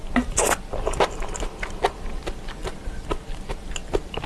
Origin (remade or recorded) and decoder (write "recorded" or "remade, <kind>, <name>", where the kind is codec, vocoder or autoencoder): recorded